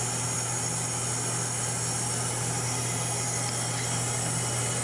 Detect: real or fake real